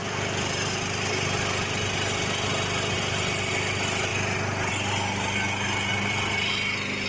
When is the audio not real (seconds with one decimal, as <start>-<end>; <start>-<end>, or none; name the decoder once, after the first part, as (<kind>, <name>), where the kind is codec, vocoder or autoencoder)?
0.0-1.1 (vocoder, BigVGAN v2); 5.9-6.5